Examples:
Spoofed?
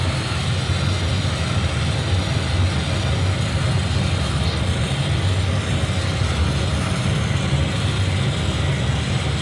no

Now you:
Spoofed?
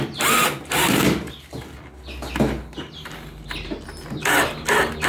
no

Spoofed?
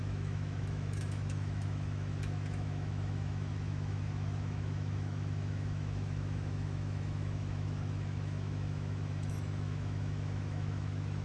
yes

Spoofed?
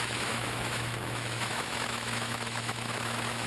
yes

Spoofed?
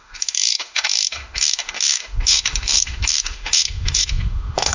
yes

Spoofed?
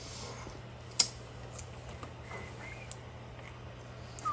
no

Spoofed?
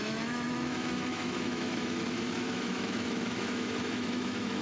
yes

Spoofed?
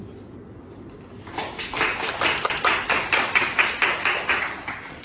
no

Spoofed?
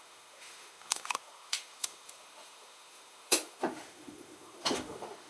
yes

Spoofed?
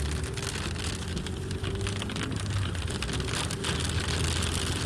no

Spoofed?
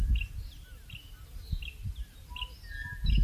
no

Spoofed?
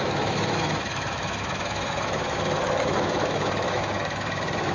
yes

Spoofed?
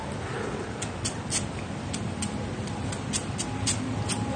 no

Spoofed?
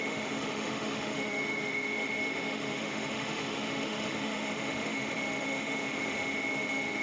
yes